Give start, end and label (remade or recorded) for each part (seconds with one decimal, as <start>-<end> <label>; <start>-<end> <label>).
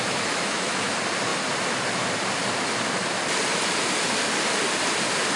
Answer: 0.0-0.9 remade; 0.9-5.4 recorded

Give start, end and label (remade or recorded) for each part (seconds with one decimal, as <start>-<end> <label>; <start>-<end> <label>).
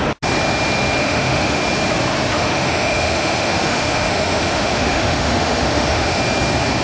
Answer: 0.0-1.0 recorded; 1.0-1.6 remade; 1.6-2.3 recorded; 2.3-6.2 remade; 6.2-6.8 recorded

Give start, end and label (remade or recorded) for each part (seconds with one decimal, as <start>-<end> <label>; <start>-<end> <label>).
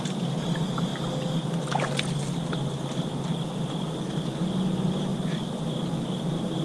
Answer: 0.0-6.6 recorded